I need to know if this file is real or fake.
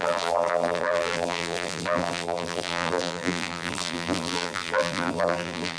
fake